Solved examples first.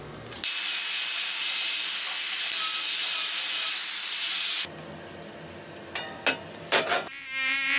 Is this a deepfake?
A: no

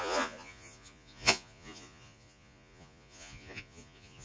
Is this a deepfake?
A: yes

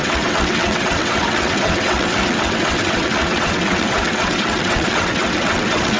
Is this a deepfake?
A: yes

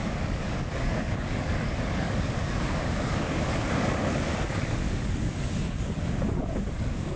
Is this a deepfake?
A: yes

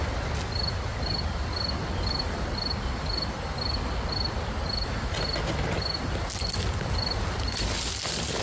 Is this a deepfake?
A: no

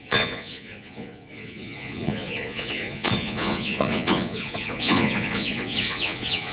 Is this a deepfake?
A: yes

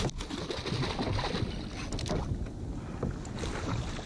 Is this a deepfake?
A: no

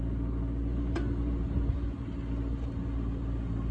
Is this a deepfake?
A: no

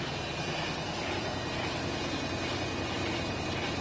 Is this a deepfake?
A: no